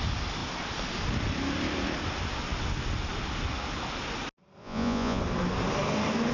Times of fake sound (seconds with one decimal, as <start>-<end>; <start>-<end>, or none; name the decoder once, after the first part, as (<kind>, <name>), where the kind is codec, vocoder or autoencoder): 4.6-5.2 (vocoder, Vocos)